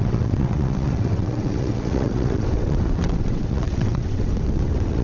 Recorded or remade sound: remade